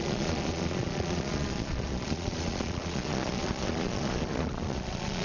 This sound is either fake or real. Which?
fake